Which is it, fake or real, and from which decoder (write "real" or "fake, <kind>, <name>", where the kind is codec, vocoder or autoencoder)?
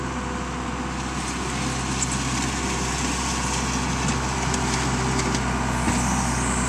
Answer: real